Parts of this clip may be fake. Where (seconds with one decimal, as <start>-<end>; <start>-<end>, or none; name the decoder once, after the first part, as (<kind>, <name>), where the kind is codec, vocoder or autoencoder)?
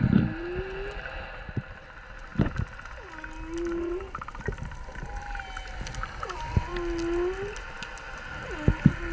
none